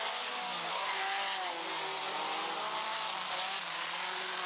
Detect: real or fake real